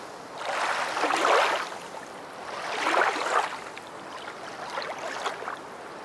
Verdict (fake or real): real